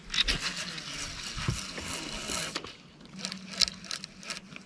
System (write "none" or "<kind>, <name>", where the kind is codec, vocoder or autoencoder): none